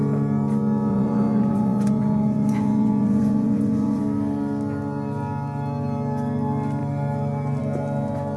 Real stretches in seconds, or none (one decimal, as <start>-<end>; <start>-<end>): 0.0-0.9; 4.0-8.4